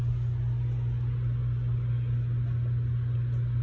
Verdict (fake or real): real